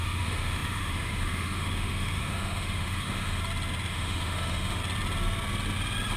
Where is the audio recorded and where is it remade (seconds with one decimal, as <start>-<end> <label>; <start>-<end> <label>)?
0.0-3.4 remade; 3.4-3.9 recorded; 3.9-4.8 remade; 4.8-6.2 recorded